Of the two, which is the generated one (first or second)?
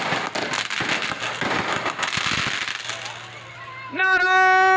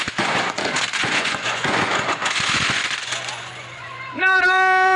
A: second